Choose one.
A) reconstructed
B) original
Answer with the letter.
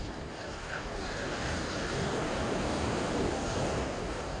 A